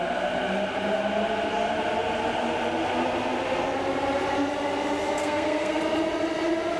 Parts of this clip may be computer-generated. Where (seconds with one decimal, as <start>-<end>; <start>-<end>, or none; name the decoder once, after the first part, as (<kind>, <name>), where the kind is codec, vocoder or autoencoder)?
5.2-5.8 (codec, SNAC)